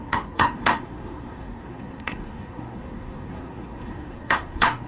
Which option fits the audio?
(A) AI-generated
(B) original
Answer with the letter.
A